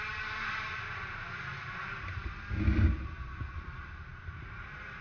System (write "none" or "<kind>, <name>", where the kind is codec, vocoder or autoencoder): none